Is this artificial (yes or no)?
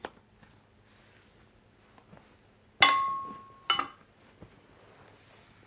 no